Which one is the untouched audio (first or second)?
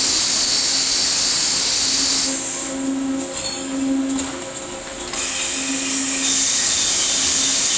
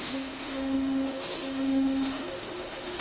first